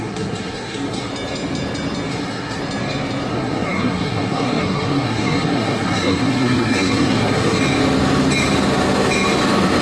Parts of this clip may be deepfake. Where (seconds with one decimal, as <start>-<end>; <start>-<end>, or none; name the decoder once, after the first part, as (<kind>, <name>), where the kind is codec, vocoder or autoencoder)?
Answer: 0.0-1.1 (codec, SNAC); 2.1-2.6; 3.3-7.6